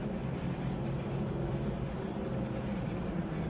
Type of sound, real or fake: real